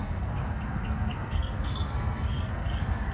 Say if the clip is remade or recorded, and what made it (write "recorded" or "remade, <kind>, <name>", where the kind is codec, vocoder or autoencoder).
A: remade, codec, SNAC